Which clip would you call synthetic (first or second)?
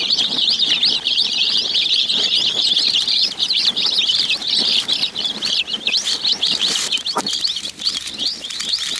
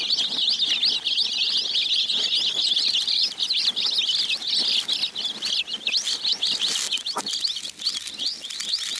first